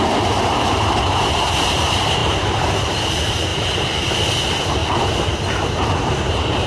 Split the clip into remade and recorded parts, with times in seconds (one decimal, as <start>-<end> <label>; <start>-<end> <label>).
0.0-3.5 remade; 3.5-4.3 recorded; 4.3-4.8 remade; 4.8-5.5 recorded; 5.5-6.7 remade